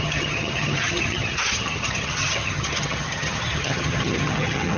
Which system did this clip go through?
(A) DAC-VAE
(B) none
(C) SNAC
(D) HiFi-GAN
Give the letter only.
D